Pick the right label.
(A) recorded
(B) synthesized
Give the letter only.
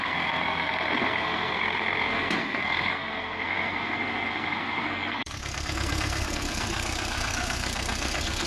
B